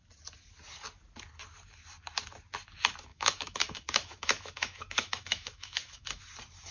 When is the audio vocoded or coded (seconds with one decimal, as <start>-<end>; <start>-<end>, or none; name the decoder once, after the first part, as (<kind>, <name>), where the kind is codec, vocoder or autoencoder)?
3.1-6.2 (autoencoder, DAC-VAE)